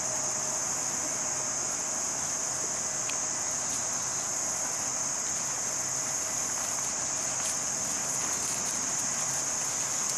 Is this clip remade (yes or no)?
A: no